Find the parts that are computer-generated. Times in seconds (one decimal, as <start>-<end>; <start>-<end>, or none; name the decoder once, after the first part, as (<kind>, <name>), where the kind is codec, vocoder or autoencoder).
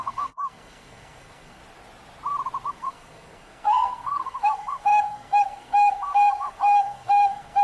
0.0-1.6 (codec, SNAC); 2.7-7.6